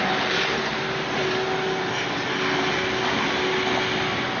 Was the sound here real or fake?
real